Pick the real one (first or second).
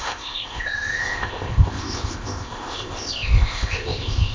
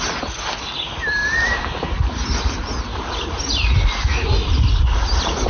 second